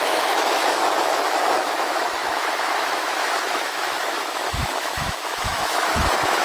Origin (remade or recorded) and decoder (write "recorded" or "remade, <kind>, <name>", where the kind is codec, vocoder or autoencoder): remade, autoencoder, DAC-VAE